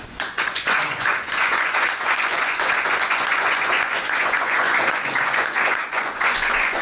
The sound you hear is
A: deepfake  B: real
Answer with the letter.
A